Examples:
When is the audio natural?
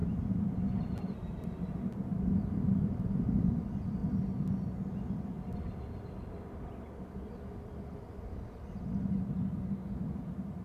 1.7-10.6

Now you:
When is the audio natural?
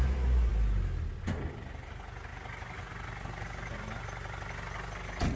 0.0-5.4